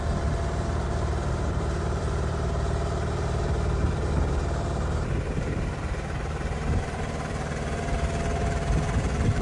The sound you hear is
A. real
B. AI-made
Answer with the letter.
B